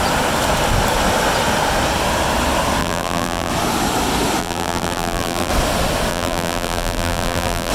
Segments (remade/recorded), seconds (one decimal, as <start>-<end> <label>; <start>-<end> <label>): 0.0-2.8 recorded; 2.8-3.5 remade; 3.5-4.4 recorded; 4.4-5.5 remade; 5.5-6.1 recorded; 6.1-7.7 remade